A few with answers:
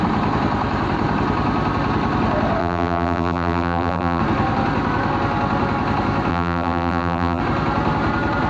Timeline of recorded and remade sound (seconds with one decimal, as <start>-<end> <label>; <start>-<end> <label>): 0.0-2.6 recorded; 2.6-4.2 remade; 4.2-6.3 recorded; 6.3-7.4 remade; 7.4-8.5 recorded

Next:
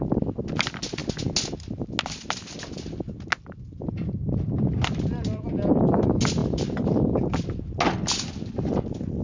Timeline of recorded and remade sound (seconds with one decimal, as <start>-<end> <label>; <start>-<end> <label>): 0.0-9.2 recorded

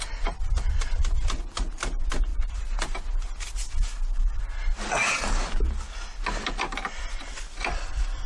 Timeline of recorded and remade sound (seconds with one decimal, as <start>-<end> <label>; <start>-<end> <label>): 0.0-2.3 recorded; 2.3-3.1 remade; 3.1-8.3 recorded

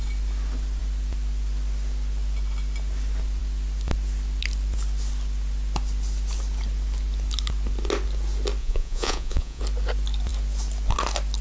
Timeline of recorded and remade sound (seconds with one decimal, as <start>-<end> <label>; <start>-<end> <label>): 0.0-8.6 recorded; 8.6-9.6 remade; 9.6-11.4 recorded

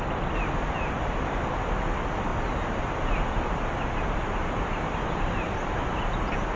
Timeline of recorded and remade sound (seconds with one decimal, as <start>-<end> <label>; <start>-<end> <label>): 0.0-6.6 recorded

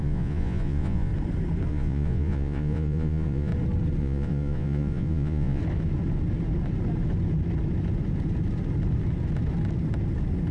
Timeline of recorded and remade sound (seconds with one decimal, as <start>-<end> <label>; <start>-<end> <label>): 0.0-1.1 remade; 1.1-1.7 recorded; 1.7-3.5 remade; 3.5-4.0 recorded; 4.0-5.6 remade; 5.6-10.5 recorded